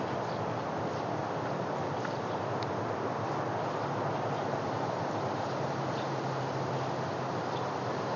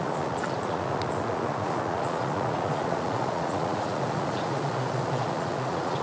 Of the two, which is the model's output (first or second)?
second